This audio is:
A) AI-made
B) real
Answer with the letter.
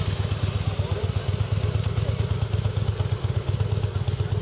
B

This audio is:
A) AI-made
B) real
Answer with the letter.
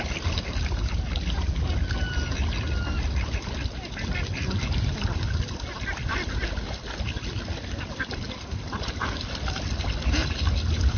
B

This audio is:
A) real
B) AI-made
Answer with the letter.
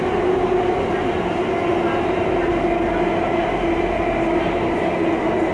A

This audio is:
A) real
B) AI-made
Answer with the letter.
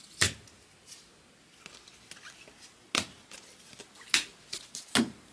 A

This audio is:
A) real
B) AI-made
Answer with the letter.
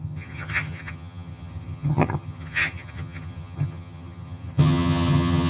B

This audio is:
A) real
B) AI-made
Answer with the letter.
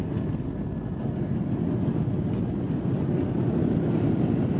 A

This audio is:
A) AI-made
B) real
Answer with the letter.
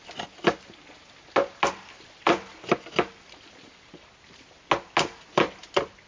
B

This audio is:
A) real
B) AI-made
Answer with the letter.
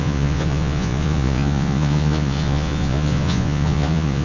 B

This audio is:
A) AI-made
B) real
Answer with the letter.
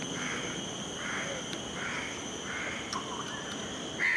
B